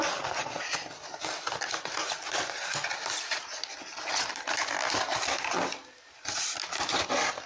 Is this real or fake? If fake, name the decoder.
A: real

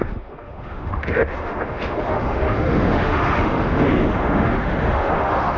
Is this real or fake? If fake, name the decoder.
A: fake, autoencoder, DAC-VAE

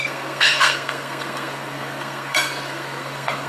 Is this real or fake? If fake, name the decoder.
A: fake, codec, SNAC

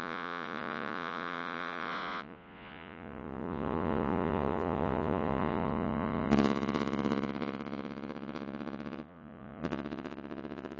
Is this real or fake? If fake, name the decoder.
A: fake, vocoder, Vocos